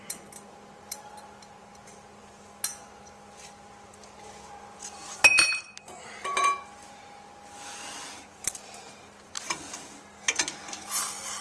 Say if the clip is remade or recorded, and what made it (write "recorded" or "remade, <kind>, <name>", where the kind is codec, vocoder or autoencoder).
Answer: recorded